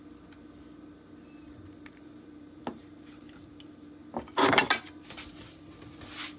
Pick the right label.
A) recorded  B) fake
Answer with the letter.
A